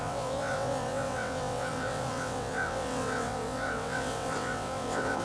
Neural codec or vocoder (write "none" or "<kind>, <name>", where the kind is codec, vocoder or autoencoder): vocoder, WaveNeXt